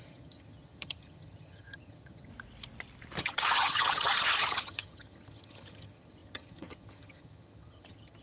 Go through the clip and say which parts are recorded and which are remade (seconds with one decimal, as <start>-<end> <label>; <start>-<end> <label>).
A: 0.0-2.3 remade; 2.3-3.2 recorded; 3.2-8.2 remade